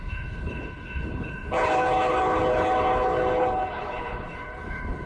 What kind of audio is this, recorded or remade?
remade